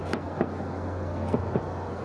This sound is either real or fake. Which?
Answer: fake